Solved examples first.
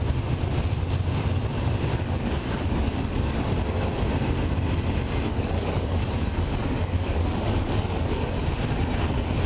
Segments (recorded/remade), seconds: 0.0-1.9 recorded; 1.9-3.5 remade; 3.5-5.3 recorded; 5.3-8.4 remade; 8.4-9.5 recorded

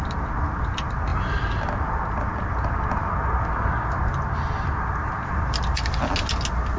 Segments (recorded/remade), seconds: 0.0-6.8 recorded

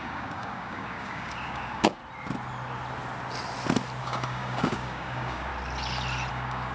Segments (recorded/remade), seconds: 0.0-2.0 remade; 2.0-4.0 recorded; 4.0-5.5 remade; 5.5-6.3 recorded; 6.3-6.7 remade

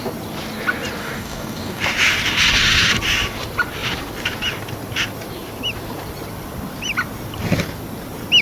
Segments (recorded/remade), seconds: 0.0-1.0 recorded; 1.0-1.8 remade; 1.8-8.4 recorded

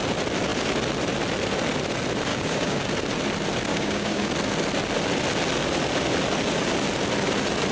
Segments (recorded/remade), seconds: 0.0-2.3 recorded; 2.3-2.8 remade; 2.8-3.7 recorded; 3.7-4.3 remade; 4.3-7.7 recorded

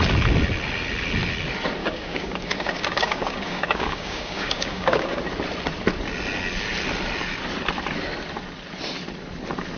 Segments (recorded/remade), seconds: 0.0-1.8 recorded; 1.8-5.2 remade; 5.2-9.8 recorded

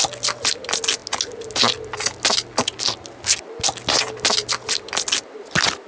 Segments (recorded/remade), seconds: 0.0-5.9 recorded

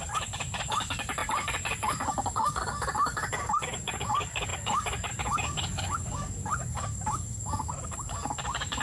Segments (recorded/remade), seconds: 0.0-8.8 remade